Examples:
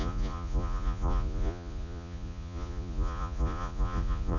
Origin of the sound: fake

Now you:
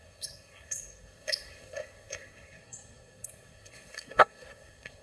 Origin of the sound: fake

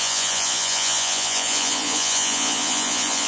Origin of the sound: fake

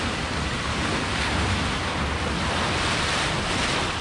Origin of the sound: real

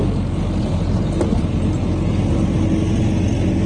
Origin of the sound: real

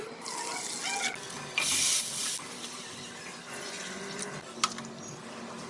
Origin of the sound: real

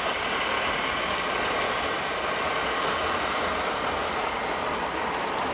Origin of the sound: real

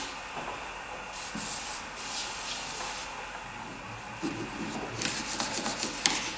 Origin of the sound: real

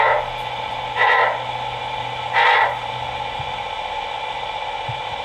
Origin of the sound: real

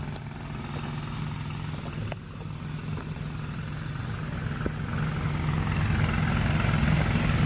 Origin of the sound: real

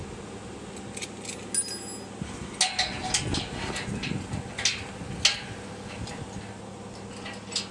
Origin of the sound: real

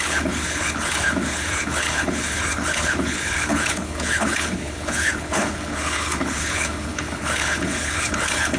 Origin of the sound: fake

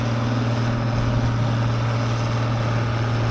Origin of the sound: real